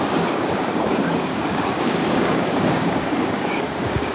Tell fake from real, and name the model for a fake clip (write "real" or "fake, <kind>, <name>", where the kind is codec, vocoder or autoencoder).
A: fake, codec, DAC